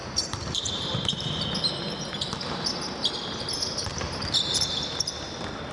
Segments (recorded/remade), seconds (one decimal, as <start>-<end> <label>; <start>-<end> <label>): 0.0-1.4 remade; 1.4-3.9 recorded; 3.9-4.7 remade; 4.7-5.7 recorded